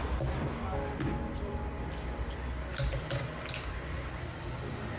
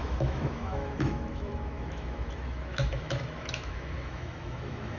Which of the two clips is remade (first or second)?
second